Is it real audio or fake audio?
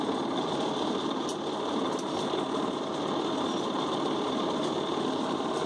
real